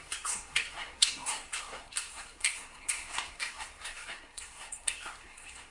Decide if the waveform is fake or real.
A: fake